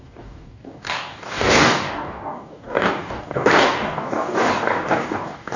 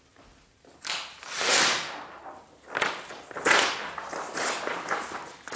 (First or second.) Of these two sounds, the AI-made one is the first